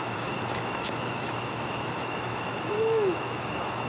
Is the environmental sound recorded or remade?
remade